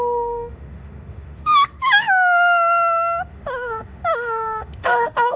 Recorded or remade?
remade